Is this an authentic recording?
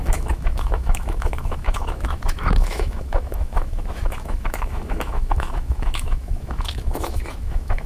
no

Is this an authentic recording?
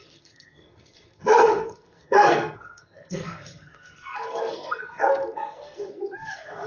no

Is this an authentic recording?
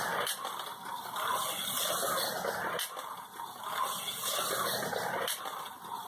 yes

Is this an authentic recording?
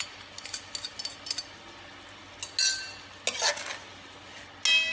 yes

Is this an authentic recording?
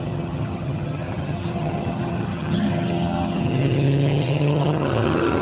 no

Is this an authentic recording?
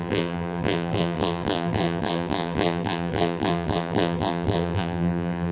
no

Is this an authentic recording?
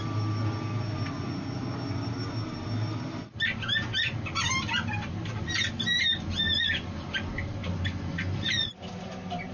yes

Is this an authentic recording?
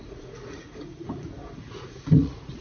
no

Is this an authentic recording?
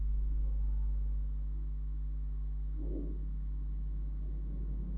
yes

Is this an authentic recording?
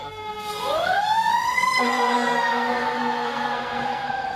no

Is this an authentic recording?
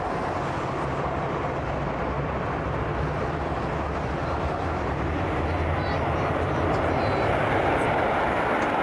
yes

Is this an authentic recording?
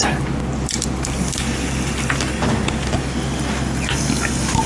yes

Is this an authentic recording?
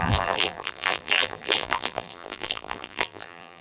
no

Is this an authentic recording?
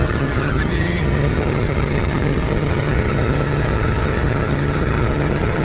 no